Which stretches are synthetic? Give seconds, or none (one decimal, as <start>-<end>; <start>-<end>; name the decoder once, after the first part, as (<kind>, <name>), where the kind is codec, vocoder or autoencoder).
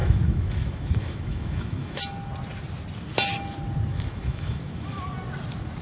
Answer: 0.0-2.0 (autoencoder, DAC-VAE); 3.9-5.0